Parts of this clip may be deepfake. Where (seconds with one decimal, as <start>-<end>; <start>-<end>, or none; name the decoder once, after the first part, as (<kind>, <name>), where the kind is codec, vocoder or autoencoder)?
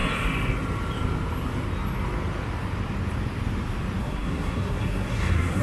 4.0-5.6 (codec, SNAC)